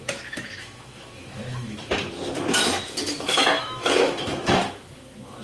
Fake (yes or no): yes